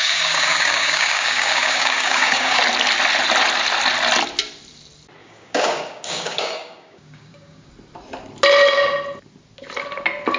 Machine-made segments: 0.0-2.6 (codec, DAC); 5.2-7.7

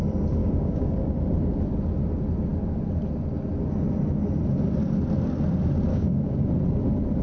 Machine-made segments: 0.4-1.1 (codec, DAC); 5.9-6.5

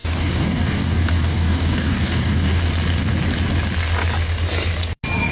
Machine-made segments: 0.0-2.6 (codec, DAC)

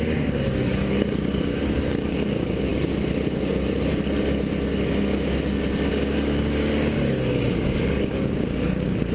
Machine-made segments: 0.0-2.7 (codec, DAC); 5.9-9.1

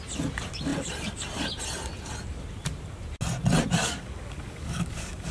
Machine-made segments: 3.8-5.3 (codec, DAC)